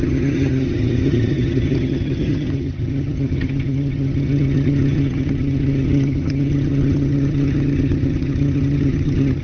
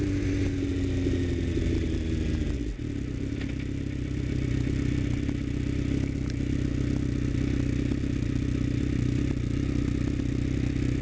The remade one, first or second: first